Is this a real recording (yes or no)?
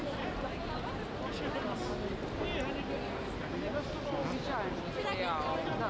yes